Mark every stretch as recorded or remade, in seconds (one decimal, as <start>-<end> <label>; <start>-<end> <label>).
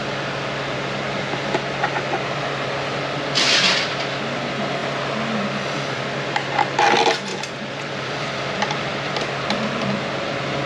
0.0-7.3 recorded; 7.3-9.2 remade; 9.2-10.7 recorded